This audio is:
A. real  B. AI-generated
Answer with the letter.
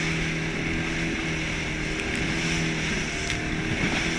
A